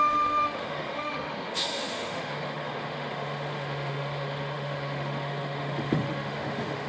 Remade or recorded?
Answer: remade